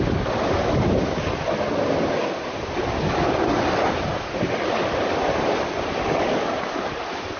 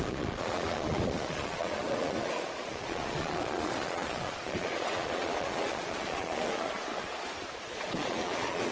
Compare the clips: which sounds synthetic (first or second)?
second